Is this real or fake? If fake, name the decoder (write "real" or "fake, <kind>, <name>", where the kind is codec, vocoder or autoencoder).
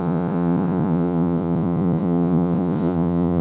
fake, vocoder, Vocos